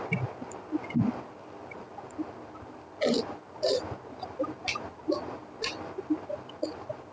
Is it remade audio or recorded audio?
recorded